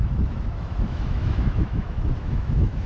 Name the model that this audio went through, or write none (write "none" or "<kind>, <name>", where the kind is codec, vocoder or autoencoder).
autoencoder, DAC-VAE